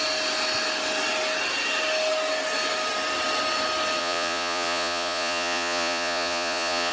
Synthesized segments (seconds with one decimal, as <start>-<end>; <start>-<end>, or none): 4.0-6.9